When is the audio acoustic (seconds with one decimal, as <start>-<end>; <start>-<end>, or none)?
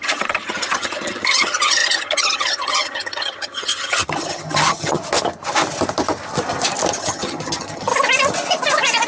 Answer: 5.0-7.0; 7.9-9.1